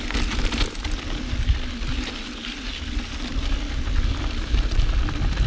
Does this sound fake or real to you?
real